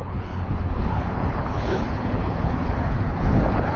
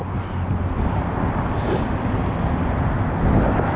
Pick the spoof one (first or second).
first